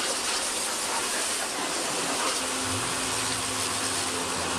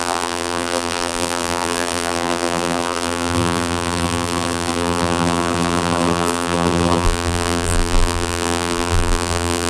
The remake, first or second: second